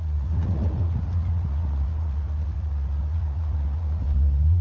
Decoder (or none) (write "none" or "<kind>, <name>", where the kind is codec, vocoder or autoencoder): vocoder, Vocos